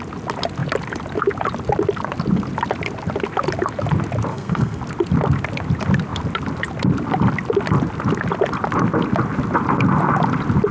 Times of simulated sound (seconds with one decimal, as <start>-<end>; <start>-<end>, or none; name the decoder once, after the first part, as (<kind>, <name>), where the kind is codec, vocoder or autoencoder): 4.3-4.8 (codec, SNAC)